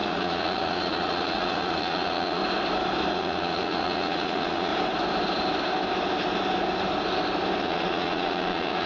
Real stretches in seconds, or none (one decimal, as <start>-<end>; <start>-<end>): 2.4-3.1; 4.7-7.6

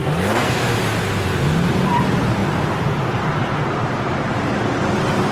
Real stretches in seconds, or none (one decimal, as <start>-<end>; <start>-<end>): 0.5-5.3